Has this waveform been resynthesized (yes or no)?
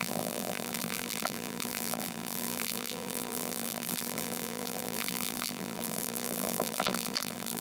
yes